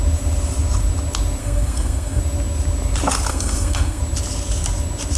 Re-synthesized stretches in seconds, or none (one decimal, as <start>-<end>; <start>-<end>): 1.4-2.2; 3.3-4.0